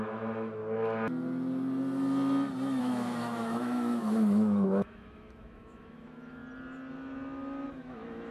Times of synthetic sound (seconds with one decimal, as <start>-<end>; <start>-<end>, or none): 0.0-0.6; 2.8-6.4; 7.7-8.3

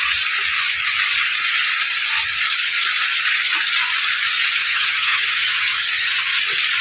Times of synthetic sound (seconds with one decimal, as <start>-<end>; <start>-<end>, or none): 4.6-6.3

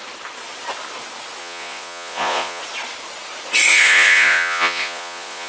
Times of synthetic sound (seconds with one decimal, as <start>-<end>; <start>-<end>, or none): 1.4-2.6; 3.7-5.5

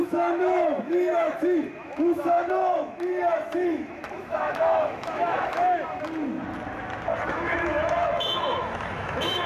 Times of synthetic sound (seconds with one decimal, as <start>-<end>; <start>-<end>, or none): 0.0-5.6; 7.3-9.5